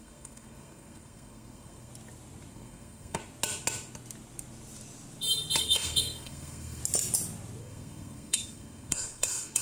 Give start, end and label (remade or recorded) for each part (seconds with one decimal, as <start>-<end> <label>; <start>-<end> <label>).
0.0-1.9 remade; 1.9-2.5 recorded; 2.5-3.2 remade; 3.2-5.6 recorded; 5.6-6.8 remade; 6.8-7.6 recorded; 7.6-9.6 remade